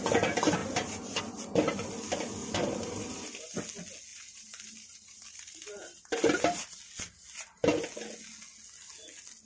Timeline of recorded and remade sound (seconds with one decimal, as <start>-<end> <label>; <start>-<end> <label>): 0.0-0.6 recorded; 0.6-1.2 remade; 1.2-2.4 recorded; 2.4-3.6 remade; 3.6-4.1 recorded; 4.1-6.8 remade; 6.8-9.5 recorded